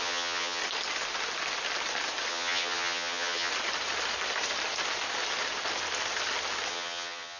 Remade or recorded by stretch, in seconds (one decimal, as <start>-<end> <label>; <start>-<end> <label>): 0.0-0.6 remade; 0.6-2.3 recorded; 2.3-3.5 remade; 3.5-6.7 recorded; 6.7-7.4 remade